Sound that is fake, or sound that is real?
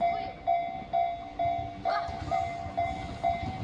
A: real